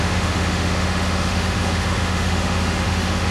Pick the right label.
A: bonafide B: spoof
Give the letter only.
B